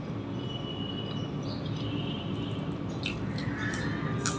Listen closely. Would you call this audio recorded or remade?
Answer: recorded